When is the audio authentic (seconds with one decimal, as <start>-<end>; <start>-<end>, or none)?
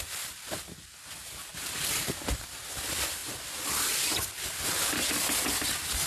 0.0-1.5; 2.6-6.1